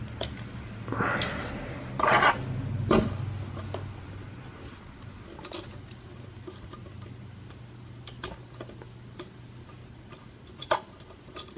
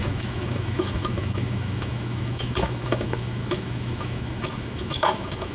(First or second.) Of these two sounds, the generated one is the second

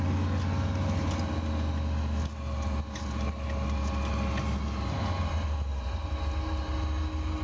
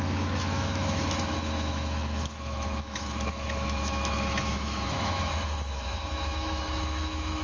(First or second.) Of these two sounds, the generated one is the second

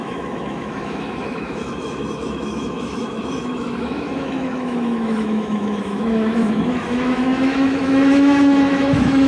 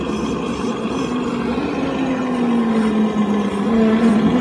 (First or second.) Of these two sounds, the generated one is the first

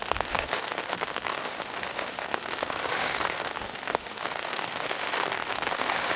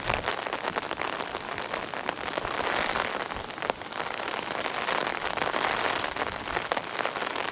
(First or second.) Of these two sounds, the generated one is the first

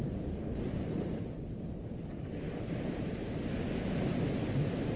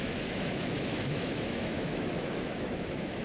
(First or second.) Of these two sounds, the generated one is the second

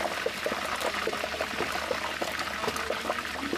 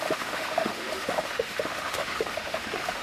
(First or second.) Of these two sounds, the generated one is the second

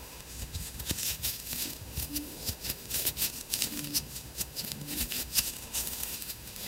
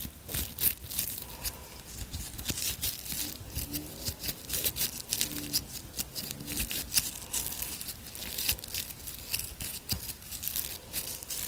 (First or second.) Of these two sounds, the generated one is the first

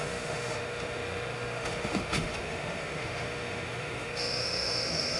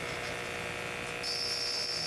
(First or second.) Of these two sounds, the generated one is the first